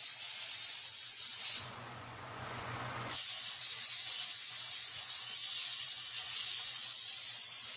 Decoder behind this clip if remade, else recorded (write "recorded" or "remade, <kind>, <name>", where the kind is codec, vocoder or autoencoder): remade, vocoder, Vocos